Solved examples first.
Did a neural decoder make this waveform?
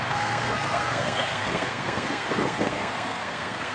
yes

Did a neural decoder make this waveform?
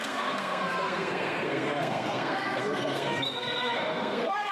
yes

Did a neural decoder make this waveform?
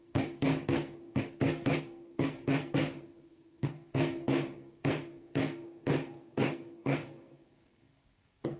yes